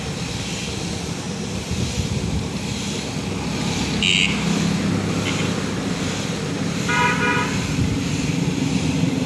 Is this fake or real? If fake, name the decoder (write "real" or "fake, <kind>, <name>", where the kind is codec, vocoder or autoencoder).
real